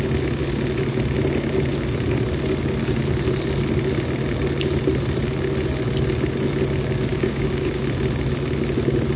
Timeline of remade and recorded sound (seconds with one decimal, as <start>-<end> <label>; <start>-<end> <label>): 0.0-7.1 recorded; 7.1-7.8 remade; 7.8-9.2 recorded